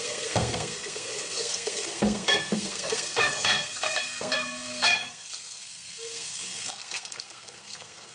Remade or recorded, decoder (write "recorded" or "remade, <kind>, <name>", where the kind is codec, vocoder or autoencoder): remade, codec, SNAC